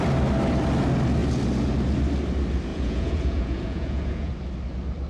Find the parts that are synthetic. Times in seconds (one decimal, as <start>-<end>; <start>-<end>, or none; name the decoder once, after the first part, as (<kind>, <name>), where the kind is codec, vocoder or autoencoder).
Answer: 2.7-4.3 (vocoder, Vocos)